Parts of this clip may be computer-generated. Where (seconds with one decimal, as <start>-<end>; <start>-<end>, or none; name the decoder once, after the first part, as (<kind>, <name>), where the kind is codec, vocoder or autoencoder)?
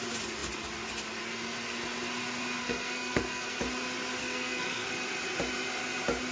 2.6-3.6 (codec, SNAC); 4.2-4.9